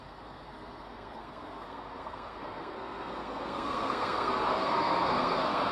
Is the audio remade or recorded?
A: remade